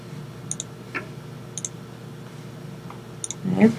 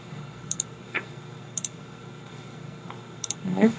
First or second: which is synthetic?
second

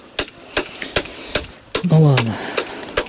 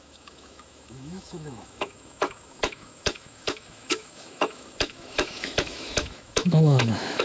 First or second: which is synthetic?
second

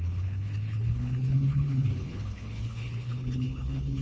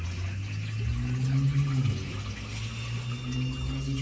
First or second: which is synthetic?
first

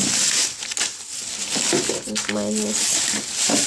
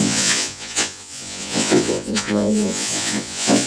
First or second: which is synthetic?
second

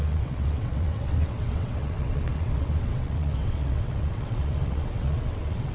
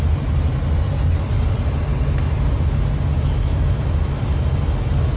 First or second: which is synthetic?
first